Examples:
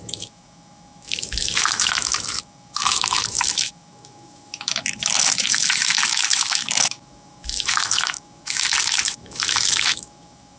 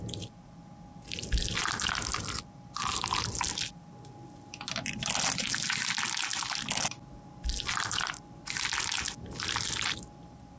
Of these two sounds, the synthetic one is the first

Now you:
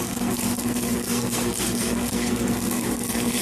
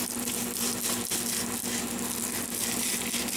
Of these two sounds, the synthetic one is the first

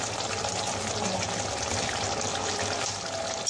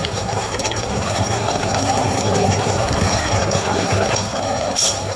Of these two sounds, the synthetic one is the second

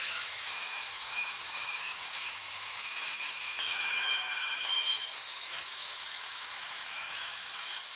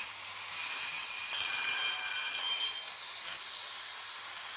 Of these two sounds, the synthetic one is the first